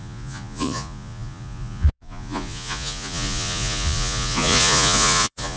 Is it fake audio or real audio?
fake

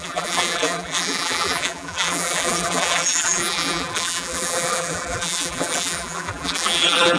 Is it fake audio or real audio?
fake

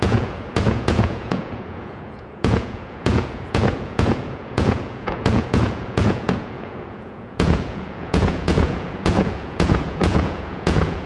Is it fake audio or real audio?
fake